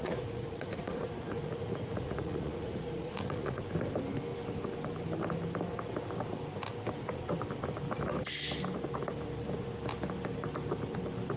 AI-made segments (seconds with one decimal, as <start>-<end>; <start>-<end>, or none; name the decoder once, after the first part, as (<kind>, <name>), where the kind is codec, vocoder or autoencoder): 0.0-3.6 (vocoder, Vocos)